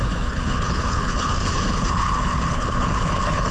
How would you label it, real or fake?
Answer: fake